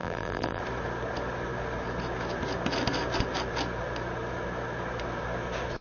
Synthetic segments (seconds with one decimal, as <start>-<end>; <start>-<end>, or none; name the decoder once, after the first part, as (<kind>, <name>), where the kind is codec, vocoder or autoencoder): 0.0-0.6 (vocoder, BigVGAN v2)